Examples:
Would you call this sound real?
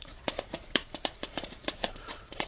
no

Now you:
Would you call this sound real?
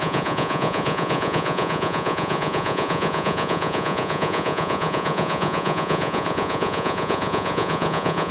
no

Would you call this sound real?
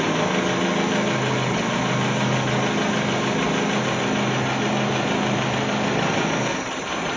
yes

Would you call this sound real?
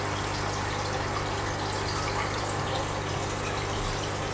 yes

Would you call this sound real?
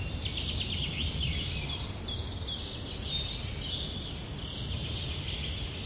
yes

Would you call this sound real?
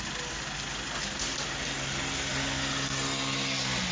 yes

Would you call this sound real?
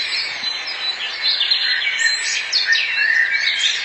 yes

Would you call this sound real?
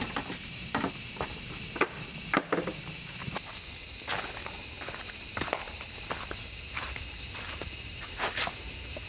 yes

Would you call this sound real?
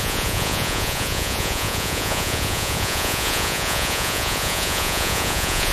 no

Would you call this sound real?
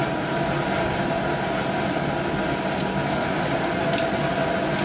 yes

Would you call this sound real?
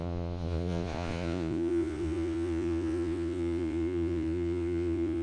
no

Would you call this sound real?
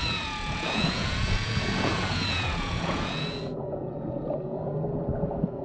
no